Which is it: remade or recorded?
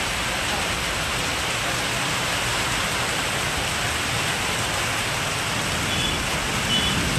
recorded